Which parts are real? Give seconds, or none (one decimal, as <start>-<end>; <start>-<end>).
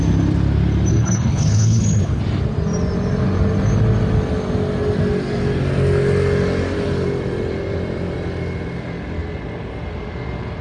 0.0-0.9; 2.2-10.6